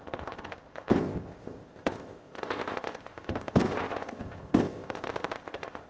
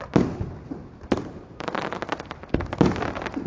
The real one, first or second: second